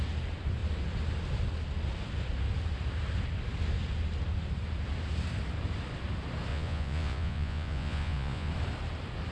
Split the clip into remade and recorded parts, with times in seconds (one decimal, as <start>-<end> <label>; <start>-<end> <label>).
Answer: 0.0-6.5 recorded; 6.5-8.5 remade; 8.5-9.3 recorded